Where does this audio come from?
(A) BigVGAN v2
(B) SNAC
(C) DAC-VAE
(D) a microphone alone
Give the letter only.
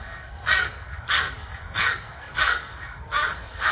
B